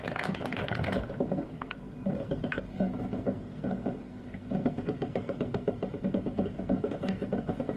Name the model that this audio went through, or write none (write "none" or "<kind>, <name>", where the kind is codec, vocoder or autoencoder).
codec, SNAC